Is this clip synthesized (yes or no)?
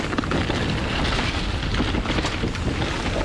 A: no